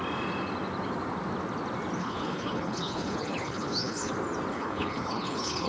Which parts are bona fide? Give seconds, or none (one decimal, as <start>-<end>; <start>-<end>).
0.0-2.0; 4.1-4.5